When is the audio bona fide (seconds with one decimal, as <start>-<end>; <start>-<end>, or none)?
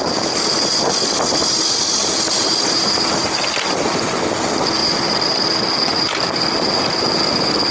0.0-4.8; 5.4-7.7